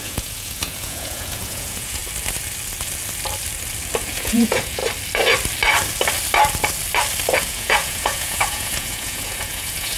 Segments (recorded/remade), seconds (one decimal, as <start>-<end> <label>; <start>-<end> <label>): 0.0-2.0 remade; 2.0-4.0 recorded; 4.0-4.8 remade; 4.8-7.4 recorded; 7.4-10.0 remade